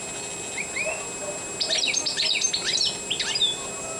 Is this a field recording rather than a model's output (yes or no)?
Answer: yes